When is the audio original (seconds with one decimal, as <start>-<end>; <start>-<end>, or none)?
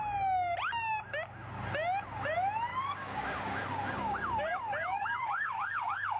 0.0-2.7